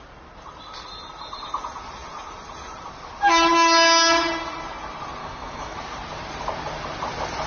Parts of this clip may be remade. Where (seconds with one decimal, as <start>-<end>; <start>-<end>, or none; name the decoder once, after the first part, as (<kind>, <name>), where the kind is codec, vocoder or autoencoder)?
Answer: 5.2-5.8 (autoencoder, DAC-VAE)